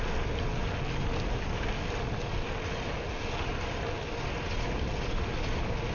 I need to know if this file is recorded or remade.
recorded